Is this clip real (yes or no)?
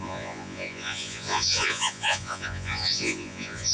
no